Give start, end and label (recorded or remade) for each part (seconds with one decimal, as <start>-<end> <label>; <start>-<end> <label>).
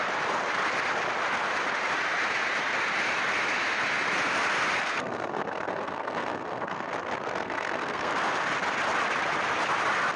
0.0-4.8 recorded; 4.8-6.9 remade; 6.9-7.4 recorded; 7.4-8.1 remade; 8.1-10.2 recorded